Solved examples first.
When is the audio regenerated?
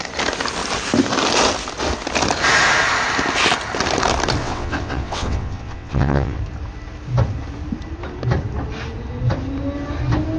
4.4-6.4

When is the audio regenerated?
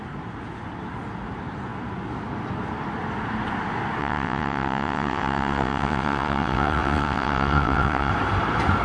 4.0-8.1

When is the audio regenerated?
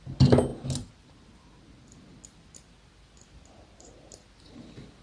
none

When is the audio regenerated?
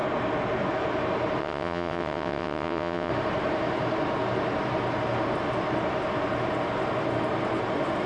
1.4-3.1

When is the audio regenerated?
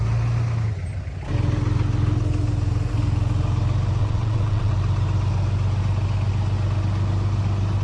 4.0-4.7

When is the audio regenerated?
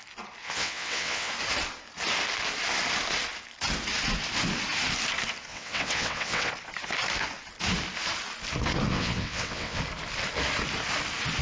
0.4-1.3; 5.5-6.5; 8.9-9.8